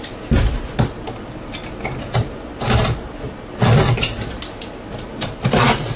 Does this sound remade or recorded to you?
recorded